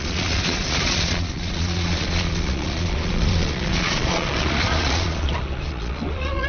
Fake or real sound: fake